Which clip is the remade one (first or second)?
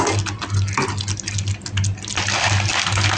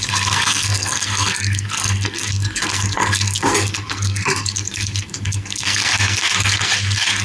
second